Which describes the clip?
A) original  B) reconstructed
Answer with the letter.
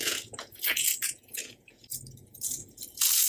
B